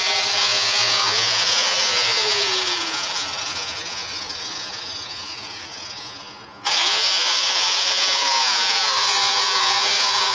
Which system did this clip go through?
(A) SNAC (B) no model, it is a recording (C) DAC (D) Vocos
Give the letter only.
D